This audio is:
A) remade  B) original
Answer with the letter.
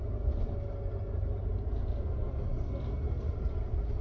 B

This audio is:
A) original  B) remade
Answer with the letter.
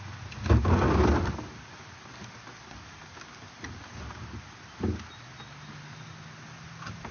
A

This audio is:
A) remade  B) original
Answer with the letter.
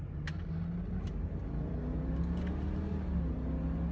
B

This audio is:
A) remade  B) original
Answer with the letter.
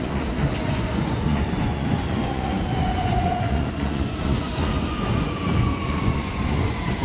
A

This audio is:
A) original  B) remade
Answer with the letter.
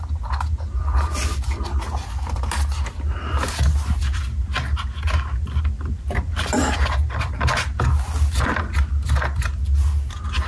A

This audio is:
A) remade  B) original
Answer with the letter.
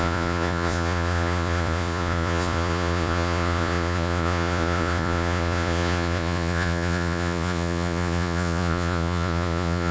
A